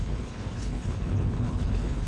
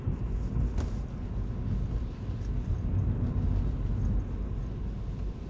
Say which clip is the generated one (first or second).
first